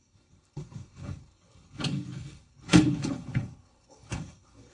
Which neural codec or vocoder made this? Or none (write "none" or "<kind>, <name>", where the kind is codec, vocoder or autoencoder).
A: codec, HILCodec